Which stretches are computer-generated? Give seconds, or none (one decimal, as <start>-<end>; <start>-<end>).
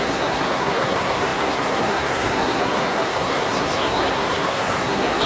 0.0-5.3